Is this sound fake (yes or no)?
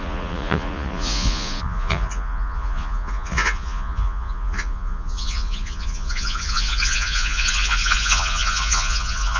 yes